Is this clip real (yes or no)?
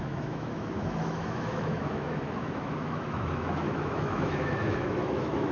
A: no